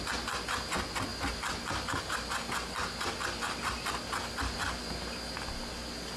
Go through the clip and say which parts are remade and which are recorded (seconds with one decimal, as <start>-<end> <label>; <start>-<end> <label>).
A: 0.0-6.2 recorded